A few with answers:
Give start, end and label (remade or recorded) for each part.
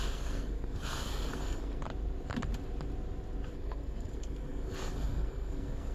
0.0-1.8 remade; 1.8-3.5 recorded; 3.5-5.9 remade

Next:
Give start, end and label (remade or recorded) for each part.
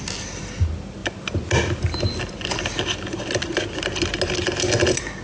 0.0-5.2 recorded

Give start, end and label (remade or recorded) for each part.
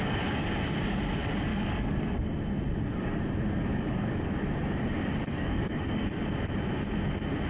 0.0-1.5 recorded; 1.5-2.1 remade; 2.1-3.7 recorded; 3.7-4.3 remade; 4.3-5.3 recorded; 5.3-6.0 remade; 6.0-7.5 recorded